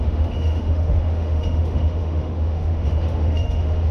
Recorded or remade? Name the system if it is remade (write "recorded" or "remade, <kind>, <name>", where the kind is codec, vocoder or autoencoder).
remade, autoencoder, DAC-VAE